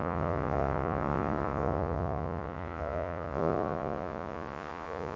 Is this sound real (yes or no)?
no